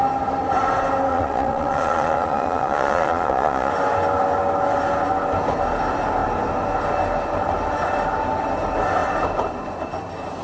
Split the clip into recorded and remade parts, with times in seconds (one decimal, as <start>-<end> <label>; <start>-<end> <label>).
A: 0.0-1.1 recorded; 1.1-3.7 remade; 3.7-10.4 recorded